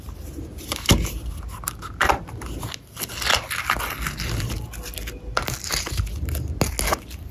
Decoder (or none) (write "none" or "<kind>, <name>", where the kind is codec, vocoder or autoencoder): none